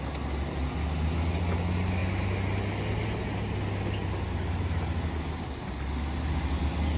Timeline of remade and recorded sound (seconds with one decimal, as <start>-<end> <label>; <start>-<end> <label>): 0.0-7.0 recorded